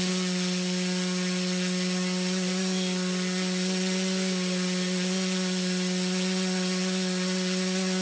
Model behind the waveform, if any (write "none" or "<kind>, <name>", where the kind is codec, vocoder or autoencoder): none